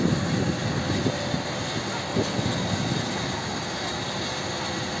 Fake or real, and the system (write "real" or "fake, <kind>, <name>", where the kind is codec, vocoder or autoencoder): real